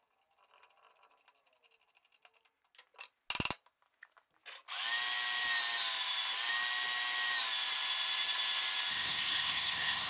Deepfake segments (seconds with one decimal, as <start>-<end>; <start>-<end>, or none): 8.9-10.1